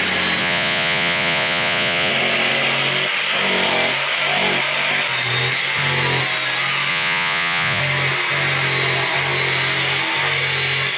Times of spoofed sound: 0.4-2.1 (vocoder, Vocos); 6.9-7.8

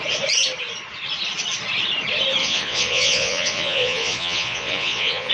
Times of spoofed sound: 2.4-5.3 (vocoder, Vocos)

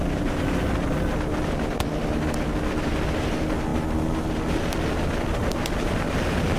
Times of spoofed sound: none

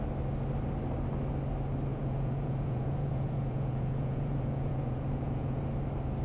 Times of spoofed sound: 1.9-5.6 (vocoder, Vocos)

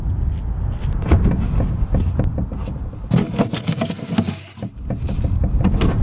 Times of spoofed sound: none

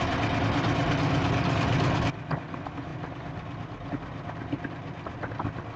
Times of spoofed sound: none